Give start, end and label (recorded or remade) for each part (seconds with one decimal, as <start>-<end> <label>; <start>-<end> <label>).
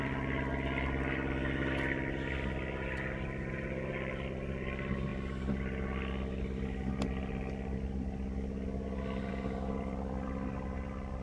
0.0-11.2 recorded